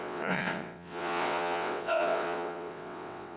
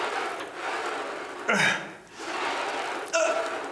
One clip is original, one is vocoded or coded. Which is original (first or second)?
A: second